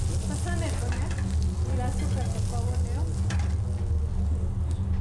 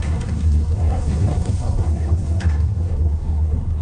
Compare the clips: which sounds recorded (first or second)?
first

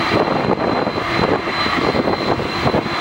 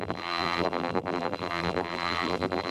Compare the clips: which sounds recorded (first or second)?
first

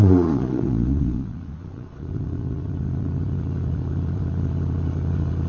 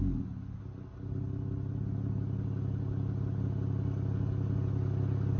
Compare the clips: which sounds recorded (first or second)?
second